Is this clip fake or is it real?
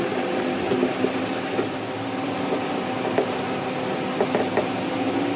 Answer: real